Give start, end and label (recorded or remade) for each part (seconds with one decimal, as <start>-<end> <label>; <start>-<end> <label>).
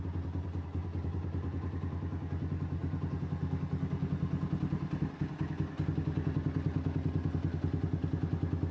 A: 0.0-8.7 recorded